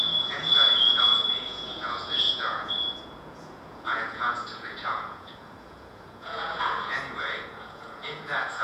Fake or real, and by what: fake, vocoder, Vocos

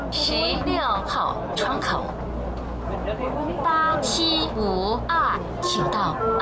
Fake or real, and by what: real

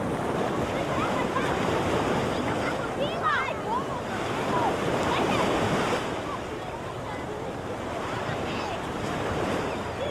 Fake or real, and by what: real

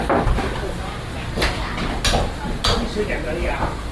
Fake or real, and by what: real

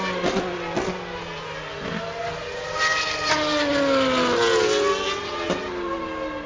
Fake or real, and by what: real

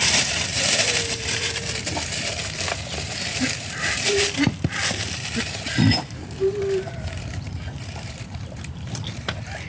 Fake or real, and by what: fake, vocoder, BigVGAN v2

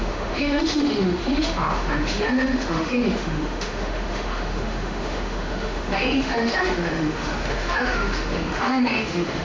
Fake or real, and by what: fake, autoencoder, DAC-VAE